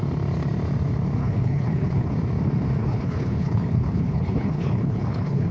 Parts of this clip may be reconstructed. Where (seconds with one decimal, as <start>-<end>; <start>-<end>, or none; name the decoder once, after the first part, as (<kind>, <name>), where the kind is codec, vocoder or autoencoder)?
1.2-2.1 (codec, HILCodec); 2.8-5.5